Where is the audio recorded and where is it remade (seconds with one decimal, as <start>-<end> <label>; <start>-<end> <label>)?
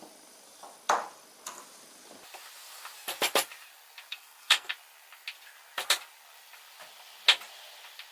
0.0-4.1 recorded; 4.1-4.7 remade; 4.7-8.1 recorded